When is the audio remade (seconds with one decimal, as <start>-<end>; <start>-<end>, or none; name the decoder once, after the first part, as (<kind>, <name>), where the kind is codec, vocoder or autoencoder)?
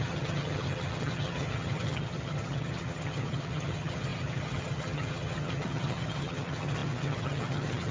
0.0-7.9 (vocoder, HiFi-GAN)